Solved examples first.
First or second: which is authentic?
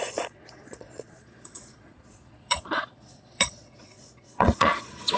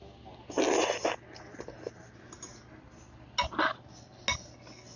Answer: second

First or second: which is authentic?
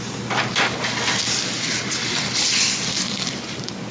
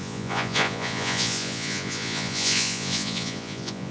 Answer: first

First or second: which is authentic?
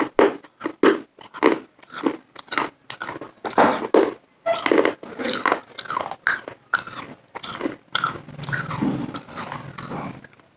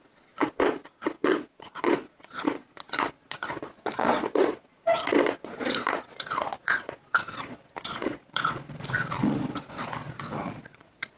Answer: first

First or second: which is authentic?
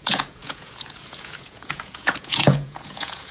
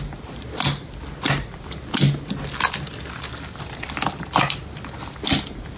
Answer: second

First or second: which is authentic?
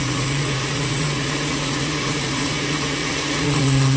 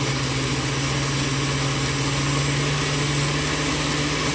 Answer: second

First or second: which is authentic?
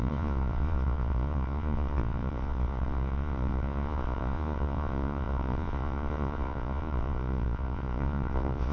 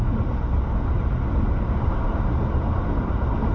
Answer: second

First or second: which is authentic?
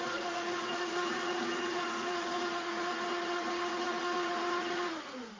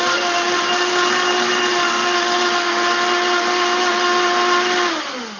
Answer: second